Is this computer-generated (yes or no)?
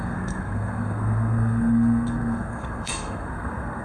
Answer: yes